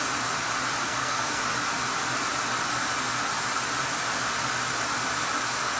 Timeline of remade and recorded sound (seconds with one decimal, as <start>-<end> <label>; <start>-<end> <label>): 0.0-0.8 recorded; 0.8-1.4 remade; 1.4-5.8 recorded